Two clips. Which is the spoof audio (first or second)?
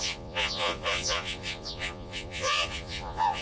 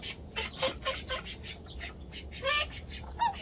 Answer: first